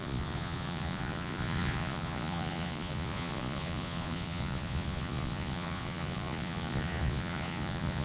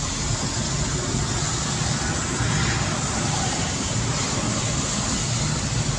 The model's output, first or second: first